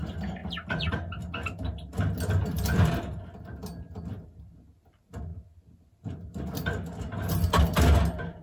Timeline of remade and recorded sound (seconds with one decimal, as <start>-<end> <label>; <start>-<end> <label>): 0.0-0.4 recorded; 0.4-1.0 remade; 1.0-8.4 recorded